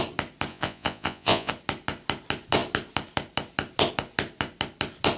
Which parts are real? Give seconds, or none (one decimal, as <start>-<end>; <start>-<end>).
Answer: 0.0-0.5; 1.5-5.2